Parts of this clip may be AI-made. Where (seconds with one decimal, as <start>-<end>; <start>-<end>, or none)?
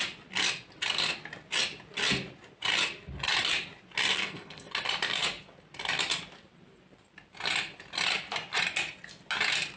4.1-4.7